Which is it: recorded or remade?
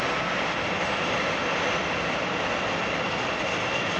recorded